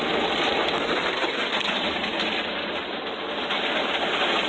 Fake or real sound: real